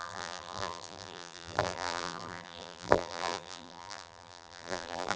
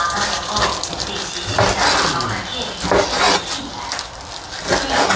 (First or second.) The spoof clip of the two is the first